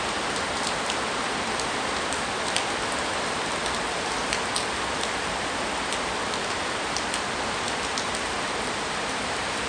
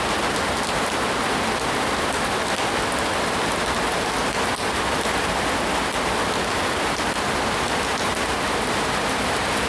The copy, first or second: first